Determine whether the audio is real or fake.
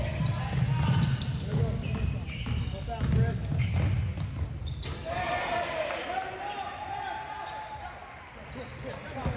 real